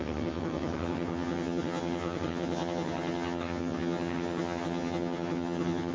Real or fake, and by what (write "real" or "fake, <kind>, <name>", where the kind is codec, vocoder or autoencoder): fake, vocoder, HiFi-GAN